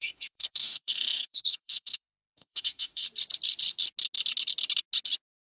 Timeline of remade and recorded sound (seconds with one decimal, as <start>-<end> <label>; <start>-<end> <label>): 0.0-3.0 remade; 3.0-5.4 recorded